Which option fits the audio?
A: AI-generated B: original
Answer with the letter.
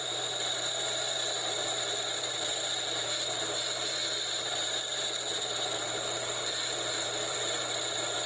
A